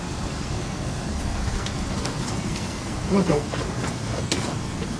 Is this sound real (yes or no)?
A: no